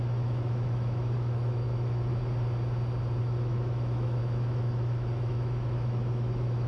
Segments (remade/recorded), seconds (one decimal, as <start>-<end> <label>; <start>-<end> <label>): 0.0-2.1 remade; 2.1-3.2 recorded; 3.2-6.7 remade